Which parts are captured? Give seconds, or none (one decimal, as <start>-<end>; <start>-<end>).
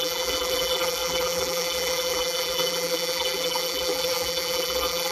none